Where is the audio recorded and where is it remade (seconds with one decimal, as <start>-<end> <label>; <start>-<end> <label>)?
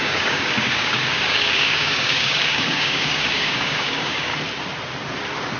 0.0-4.3 remade; 4.3-5.6 recorded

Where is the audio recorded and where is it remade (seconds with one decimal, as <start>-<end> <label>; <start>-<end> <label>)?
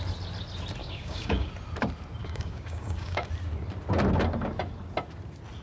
0.0-0.8 recorded; 0.8-1.5 remade; 1.5-2.2 recorded; 2.2-3.3 remade; 3.3-5.6 recorded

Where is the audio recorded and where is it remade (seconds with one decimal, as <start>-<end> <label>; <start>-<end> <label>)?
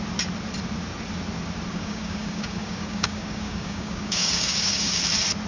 0.0-1.7 recorded; 1.7-5.0 remade; 5.0-5.5 recorded